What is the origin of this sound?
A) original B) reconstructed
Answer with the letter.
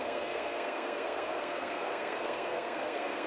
B